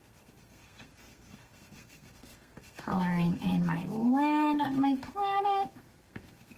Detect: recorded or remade remade